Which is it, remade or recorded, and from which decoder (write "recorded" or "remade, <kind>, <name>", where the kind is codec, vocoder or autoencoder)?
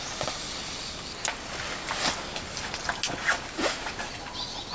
recorded